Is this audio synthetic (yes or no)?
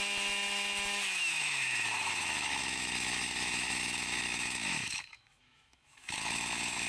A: yes